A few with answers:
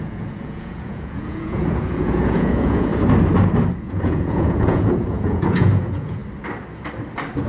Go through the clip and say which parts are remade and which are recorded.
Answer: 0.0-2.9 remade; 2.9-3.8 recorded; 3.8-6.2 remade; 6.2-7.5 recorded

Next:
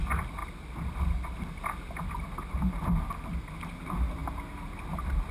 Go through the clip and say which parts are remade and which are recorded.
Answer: 0.0-5.3 recorded

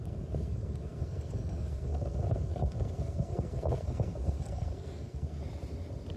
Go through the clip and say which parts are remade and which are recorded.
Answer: 0.0-5.4 remade; 5.4-6.2 recorded

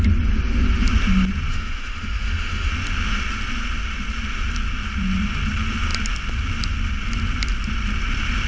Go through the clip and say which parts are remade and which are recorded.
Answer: 0.0-1.5 recorded; 1.5-2.7 remade; 2.7-8.5 recorded

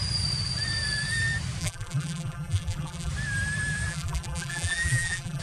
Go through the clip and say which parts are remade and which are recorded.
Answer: 0.0-1.6 recorded; 1.6-3.1 remade; 3.1-3.9 recorded; 3.9-5.4 remade

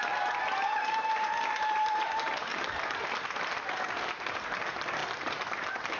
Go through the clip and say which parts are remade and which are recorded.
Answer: 0.0-2.5 remade; 2.5-3.0 recorded; 3.0-6.0 remade

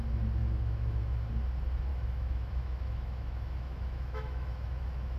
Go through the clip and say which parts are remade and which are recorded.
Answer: 0.0-0.4 recorded; 0.4-1.3 remade; 1.3-1.9 recorded; 1.9-5.2 remade

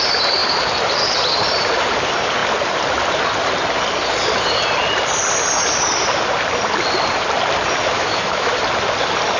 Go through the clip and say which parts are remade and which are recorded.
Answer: 0.0-7.9 recorded; 7.9-8.5 remade; 8.5-9.4 recorded